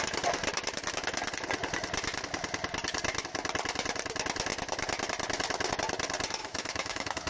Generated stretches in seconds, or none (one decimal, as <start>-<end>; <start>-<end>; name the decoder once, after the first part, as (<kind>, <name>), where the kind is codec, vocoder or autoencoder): 6.4-7.3 (autoencoder, DAC-VAE)